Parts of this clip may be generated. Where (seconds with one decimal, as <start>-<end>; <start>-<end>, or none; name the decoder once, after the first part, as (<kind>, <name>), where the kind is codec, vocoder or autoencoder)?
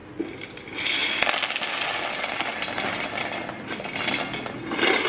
none